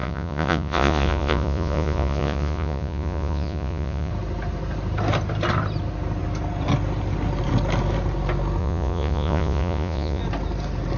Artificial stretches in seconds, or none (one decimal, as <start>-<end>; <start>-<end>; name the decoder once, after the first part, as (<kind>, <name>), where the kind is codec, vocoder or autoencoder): 0.0-4.1 (vocoder, Vocos); 8.6-10.2